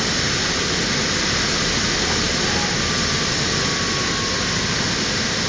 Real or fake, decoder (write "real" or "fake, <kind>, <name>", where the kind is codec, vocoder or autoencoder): real